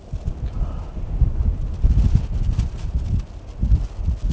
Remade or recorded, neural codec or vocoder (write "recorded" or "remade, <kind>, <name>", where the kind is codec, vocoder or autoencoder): recorded